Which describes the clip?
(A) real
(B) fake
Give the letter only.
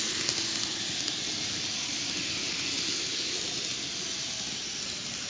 A